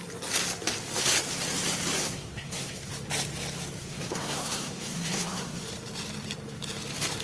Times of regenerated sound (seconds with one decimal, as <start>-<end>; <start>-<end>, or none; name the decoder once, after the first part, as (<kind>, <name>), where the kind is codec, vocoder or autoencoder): 2.0-2.9 (codec, SNAC); 3.8-5.6

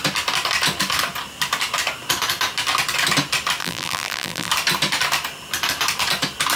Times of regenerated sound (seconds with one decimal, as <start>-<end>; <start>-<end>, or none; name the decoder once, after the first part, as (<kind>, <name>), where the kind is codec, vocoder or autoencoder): 3.6-4.5 (vocoder, BigVGAN v2)

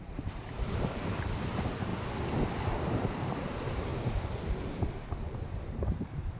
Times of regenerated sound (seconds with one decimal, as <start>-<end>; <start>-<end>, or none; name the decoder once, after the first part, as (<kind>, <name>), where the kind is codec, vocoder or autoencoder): 0.0-1.9 (vocoder, BigVGAN v2); 2.6-3.9; 5.5-6.4

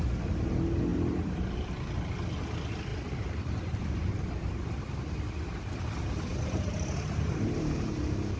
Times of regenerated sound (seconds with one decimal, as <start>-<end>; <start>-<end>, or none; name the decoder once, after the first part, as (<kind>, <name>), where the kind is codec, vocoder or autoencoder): 0.9-1.7 (vocoder, BigVGAN v2); 2.9-4.1; 6.3-8.0

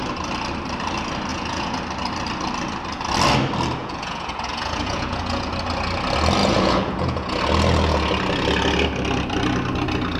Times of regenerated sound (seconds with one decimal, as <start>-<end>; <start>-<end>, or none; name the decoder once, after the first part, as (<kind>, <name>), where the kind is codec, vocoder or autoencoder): 1.3-1.8 (vocoder, Vocos); 3.8-5.5; 6.4-7.4